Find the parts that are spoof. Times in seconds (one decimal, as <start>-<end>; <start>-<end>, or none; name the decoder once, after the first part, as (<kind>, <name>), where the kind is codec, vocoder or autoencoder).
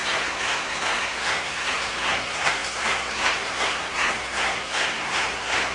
0.0-5.7 (codec, SNAC)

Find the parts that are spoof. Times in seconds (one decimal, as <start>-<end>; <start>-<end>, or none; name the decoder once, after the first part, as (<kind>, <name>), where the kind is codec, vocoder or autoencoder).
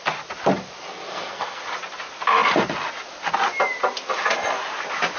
0.9-1.6 (codec, SNAC)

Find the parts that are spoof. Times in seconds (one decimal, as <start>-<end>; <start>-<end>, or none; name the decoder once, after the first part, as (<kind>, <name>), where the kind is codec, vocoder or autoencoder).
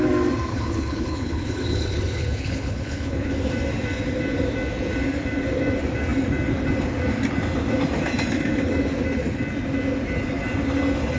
0.5-3.3 (codec, HILCodec)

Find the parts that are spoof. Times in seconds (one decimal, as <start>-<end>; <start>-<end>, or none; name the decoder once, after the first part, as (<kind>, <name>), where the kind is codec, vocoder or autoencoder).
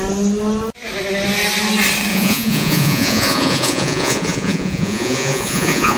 2.1-6.0 (vocoder, Vocos)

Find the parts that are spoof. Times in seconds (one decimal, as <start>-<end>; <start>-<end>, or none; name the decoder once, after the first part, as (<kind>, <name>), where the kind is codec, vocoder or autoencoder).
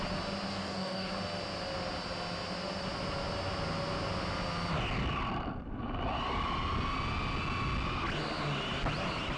0.5-1.1 (codec, DAC)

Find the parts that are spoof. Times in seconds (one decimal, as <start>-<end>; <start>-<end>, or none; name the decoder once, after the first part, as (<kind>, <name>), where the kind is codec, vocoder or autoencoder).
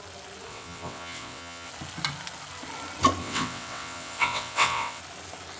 0.5-1.7 (vocoder, WaveNeXt); 3.2-5.0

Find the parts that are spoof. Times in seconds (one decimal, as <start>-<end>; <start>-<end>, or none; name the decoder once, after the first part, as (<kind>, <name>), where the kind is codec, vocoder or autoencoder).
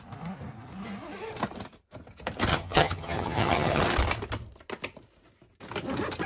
2.5-3.8 (vocoder, HiFi-GAN)